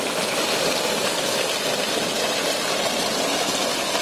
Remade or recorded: recorded